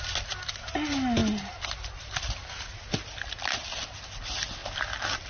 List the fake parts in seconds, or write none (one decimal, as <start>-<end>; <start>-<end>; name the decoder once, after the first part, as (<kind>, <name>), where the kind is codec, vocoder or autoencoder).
none